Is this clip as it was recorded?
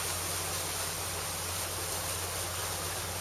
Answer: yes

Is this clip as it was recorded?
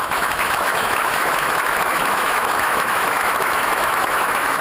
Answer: no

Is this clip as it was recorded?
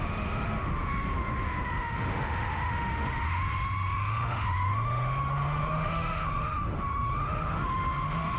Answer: no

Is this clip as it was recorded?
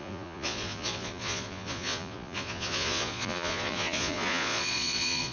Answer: no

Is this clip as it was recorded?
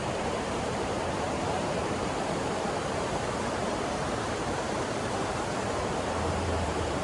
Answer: no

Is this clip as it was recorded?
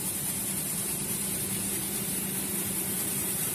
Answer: no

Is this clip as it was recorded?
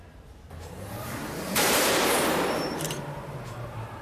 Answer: no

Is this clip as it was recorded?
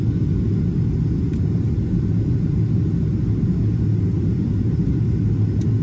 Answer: yes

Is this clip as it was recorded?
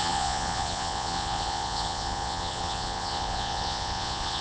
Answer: no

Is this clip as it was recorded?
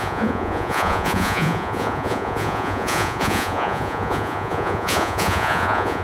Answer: no